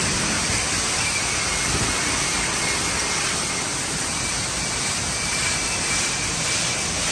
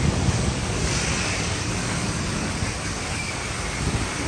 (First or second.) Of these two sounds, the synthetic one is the second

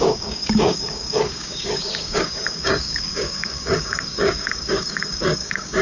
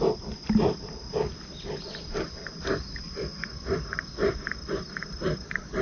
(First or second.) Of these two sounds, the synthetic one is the first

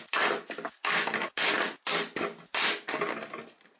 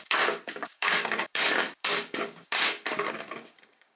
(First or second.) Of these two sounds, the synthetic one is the second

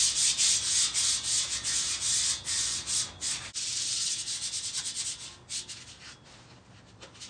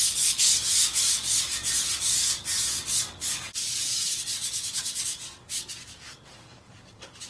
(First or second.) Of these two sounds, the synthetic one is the second